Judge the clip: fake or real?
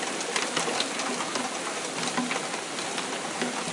real